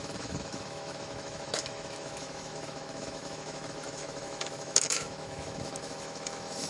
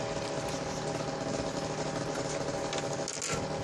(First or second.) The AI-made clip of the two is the first